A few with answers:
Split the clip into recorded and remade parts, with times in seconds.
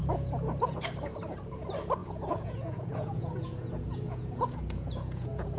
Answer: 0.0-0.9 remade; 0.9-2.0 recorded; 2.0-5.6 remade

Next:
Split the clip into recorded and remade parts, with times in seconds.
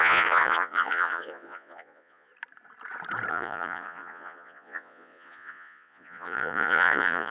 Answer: 0.0-2.3 remade; 2.3-3.3 recorded; 3.3-7.3 remade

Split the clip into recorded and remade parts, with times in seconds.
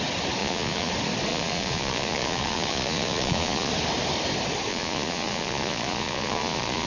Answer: 0.0-0.4 recorded; 0.4-0.9 remade; 0.9-1.3 recorded; 1.3-3.7 remade; 3.7-4.7 recorded; 4.7-6.9 remade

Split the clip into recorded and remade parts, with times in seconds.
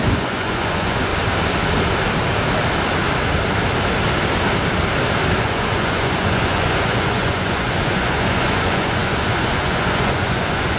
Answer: 0.0-1.1 remade; 1.1-5.4 recorded; 5.4-10.8 remade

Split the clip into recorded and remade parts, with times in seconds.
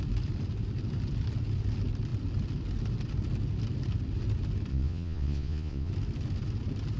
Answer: 0.0-4.7 recorded; 4.7-5.9 remade; 5.9-7.0 recorded